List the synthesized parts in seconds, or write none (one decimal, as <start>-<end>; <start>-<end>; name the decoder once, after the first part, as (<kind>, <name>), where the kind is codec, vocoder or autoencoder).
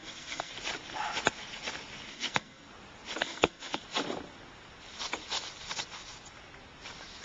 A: 0.0-0.5 (codec, SNAC); 2.1-2.7; 3.2-3.8